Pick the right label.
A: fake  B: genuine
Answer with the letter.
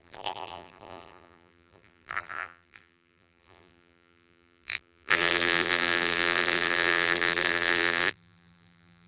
A